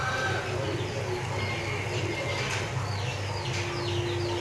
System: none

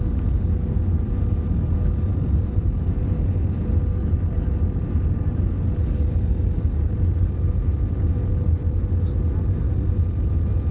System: none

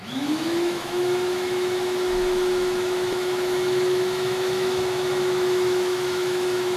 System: autoencoder, DAC-VAE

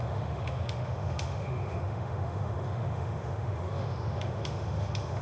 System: autoencoder, DAC-VAE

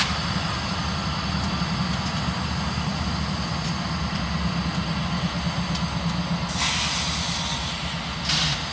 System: none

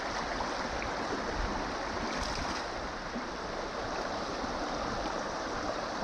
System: none